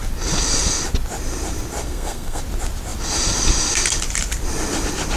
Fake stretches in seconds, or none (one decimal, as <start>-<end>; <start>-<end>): 1.8-2.4